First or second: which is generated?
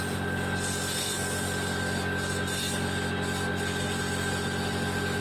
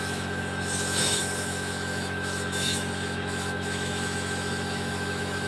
second